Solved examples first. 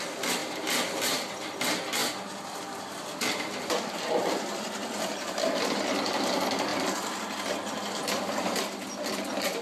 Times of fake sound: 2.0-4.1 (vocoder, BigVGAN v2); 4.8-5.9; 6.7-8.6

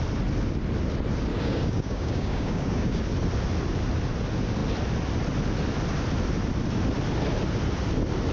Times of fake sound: 1.3-3.0 (codec, DAC)

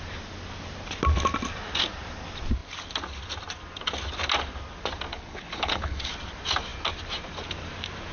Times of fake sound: 5.1-6.1 (codec, HILCodec)

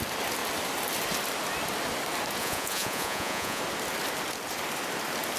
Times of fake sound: 2.4-3.6 (vocoder, Vocos)

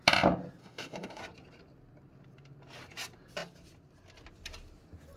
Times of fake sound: 0.6-1.2 (autoencoder, DAC-VAE)